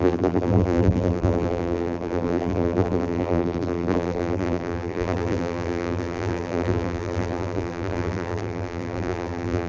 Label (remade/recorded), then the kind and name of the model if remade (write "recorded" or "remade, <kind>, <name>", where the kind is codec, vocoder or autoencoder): remade, vocoder, BigVGAN v2